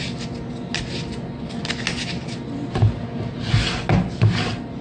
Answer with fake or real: real